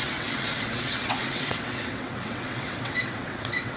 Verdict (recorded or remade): remade